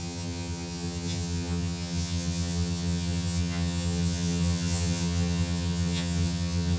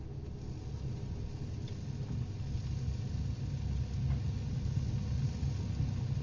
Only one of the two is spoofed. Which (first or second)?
first